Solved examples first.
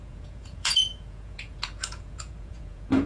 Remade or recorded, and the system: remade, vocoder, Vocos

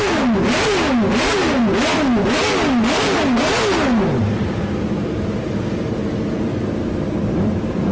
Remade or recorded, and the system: recorded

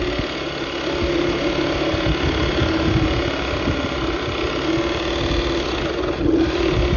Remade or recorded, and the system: recorded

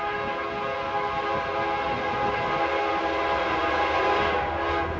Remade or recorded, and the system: recorded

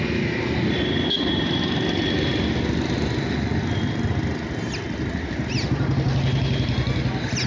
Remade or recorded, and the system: recorded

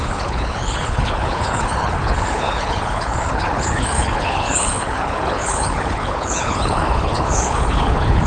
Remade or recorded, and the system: remade, codec, HILCodec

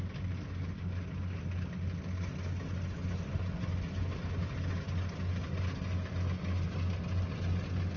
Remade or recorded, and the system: recorded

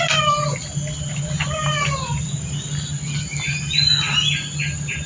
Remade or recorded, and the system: recorded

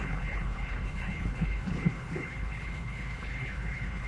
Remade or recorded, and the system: remade, codec, HILCodec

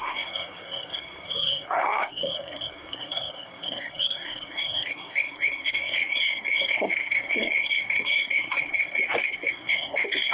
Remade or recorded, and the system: remade, codec, SNAC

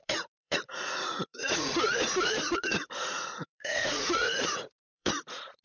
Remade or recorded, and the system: remade, vocoder, Vocos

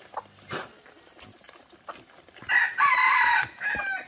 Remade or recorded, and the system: recorded